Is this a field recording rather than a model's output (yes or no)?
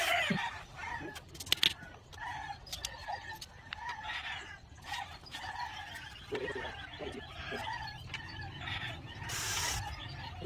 yes